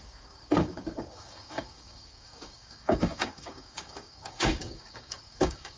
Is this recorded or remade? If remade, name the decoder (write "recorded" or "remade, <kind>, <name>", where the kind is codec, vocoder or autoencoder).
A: remade, codec, DAC